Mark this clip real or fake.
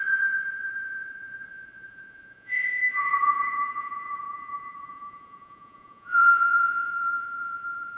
fake